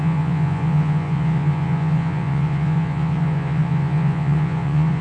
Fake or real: fake